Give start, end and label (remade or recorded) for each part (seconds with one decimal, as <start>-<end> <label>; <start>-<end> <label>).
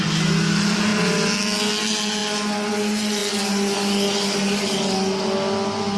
0.0-6.0 recorded